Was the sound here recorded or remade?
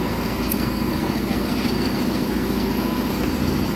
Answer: remade